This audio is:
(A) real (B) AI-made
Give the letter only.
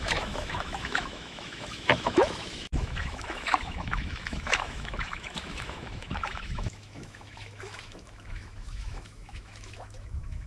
B